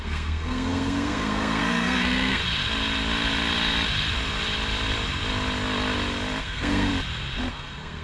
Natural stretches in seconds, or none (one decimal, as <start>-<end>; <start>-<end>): 2.4-6.4; 6.9-7.5